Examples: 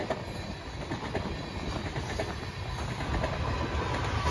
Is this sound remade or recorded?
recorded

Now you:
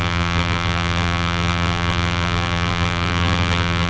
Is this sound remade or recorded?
remade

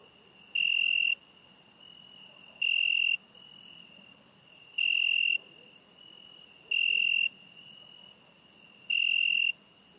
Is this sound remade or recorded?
recorded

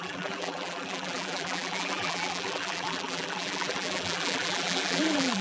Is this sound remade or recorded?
remade